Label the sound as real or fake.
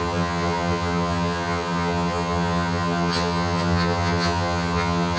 fake